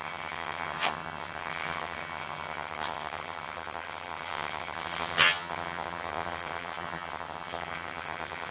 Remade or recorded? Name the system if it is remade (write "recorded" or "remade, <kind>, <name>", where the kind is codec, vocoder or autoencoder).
remade, vocoder, HiFi-GAN